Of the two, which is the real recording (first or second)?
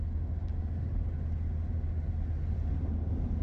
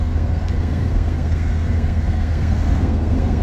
first